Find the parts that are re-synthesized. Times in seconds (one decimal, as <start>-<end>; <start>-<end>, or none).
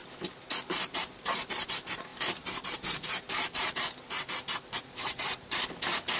1.0-6.2